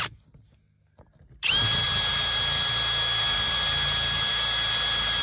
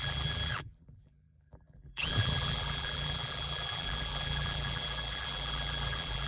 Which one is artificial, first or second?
second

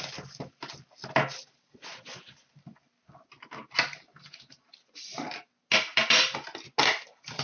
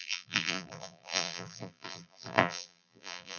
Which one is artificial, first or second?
second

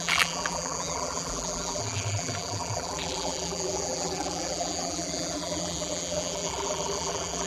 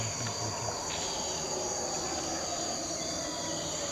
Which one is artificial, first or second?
first